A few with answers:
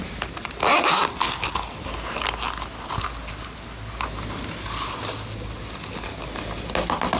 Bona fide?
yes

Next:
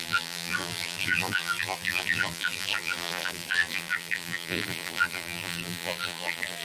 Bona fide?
no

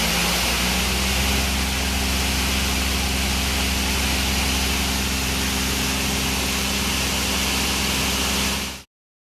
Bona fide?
yes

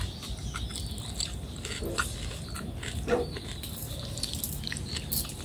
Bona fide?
yes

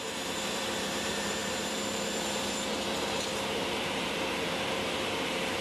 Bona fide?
no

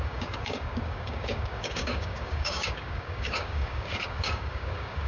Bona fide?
no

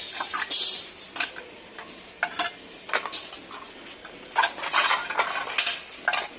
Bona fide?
yes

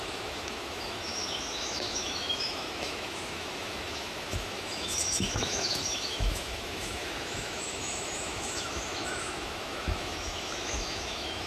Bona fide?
no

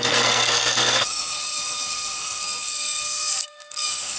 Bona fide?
no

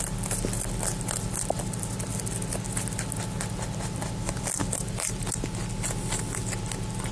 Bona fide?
yes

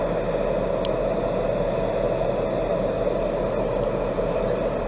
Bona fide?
yes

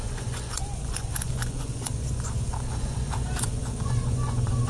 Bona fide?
no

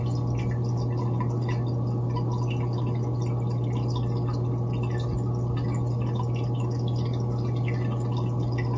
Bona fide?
yes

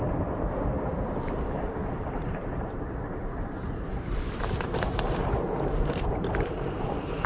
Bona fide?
no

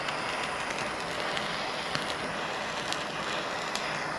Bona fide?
yes